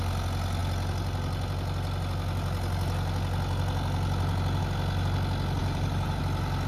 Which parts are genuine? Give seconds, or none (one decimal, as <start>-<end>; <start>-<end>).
0.0-5.6; 6.2-6.7